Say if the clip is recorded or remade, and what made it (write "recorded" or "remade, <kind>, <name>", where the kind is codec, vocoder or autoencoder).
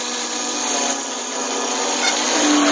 recorded